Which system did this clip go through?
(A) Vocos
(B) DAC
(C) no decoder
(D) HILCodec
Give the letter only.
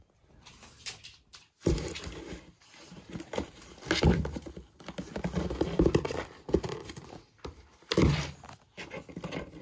C